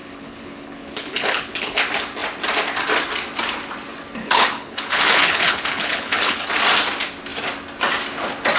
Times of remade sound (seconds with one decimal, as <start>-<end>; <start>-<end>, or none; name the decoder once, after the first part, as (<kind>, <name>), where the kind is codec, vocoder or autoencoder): 0.0-1.8 (codec, HILCodec); 4.2-6.5